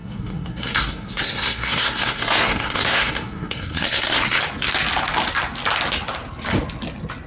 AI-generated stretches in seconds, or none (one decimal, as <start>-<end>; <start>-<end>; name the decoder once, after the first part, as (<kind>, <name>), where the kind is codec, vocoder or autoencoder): 0.0-4.4 (codec, SNAC)